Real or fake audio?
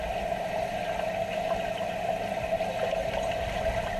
real